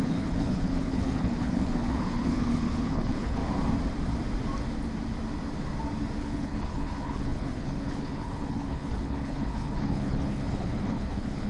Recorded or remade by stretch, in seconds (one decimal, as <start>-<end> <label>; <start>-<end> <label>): 0.0-3.4 remade; 3.4-6.2 recorded; 6.2-11.5 remade